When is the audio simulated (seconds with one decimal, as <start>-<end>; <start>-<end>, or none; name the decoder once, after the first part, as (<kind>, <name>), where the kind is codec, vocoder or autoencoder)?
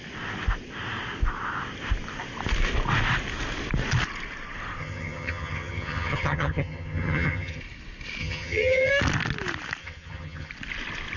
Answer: 4.8-7.6 (vocoder, HiFi-GAN); 8.2-8.9; 9.8-10.5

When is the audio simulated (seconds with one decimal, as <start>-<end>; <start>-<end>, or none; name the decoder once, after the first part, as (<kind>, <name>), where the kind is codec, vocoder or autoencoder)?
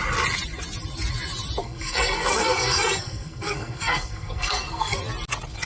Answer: 1.6-5.0 (codec, SNAC)